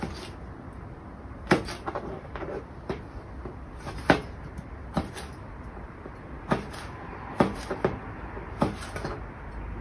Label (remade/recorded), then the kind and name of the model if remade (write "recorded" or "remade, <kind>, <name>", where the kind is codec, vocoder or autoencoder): recorded